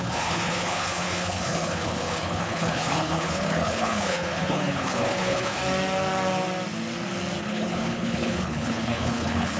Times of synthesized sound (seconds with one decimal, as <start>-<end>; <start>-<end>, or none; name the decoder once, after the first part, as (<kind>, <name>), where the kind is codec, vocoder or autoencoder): 0.0-5.6 (codec, HILCodec); 7.4-9.6